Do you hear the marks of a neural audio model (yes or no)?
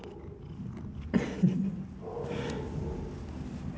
no